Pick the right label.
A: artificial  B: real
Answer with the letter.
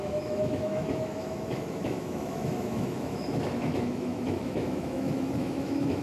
A